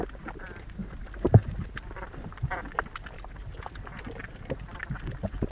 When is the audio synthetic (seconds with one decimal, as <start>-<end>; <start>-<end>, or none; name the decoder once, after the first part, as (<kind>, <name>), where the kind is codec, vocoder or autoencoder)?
0.0-0.8 (vocoder, BigVGAN v2); 2.1-2.5; 3.1-3.5; 5.1-5.5